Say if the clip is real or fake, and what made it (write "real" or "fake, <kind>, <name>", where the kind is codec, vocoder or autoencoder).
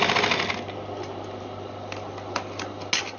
real